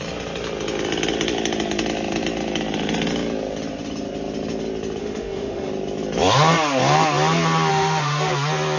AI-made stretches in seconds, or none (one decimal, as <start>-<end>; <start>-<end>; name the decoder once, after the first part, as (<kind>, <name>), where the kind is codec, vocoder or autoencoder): 5.0-5.7 (autoencoder, DAC-VAE); 7.7-8.3